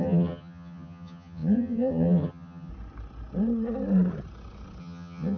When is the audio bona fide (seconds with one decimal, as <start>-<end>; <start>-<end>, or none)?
2.7-4.8